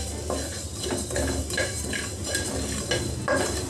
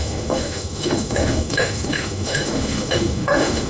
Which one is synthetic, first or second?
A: second